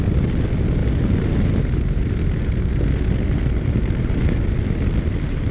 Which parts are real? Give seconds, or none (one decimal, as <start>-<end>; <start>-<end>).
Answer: 0.0-5.5